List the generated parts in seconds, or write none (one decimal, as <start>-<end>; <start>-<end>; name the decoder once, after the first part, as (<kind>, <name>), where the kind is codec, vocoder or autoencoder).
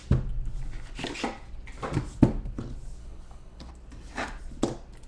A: 3.0-3.7 (codec, HILCodec)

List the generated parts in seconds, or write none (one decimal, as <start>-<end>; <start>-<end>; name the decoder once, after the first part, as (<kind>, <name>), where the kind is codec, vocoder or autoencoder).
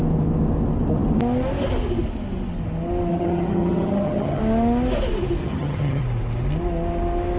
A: 3.1-4.4 (vocoder, HiFi-GAN); 5.4-6.0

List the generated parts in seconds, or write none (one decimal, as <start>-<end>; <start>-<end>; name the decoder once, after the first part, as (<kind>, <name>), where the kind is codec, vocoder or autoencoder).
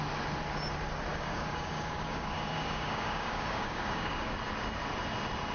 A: 1.1-4.4 (codec, DAC)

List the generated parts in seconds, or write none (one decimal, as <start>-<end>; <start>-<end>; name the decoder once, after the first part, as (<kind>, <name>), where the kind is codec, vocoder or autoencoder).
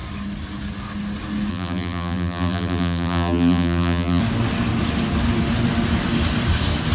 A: 1.5-4.2 (vocoder, BigVGAN v2)